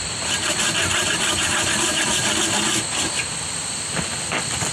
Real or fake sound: real